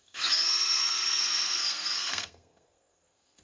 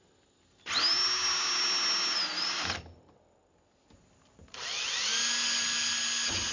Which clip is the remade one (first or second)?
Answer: first